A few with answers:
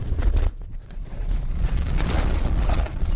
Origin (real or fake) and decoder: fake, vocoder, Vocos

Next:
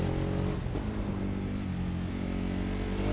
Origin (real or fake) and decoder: real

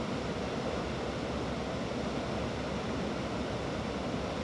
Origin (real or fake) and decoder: real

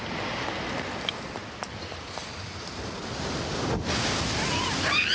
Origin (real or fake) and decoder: real